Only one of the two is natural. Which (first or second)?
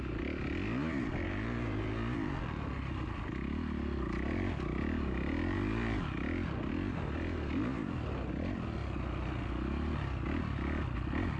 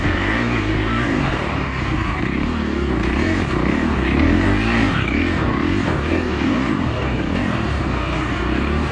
first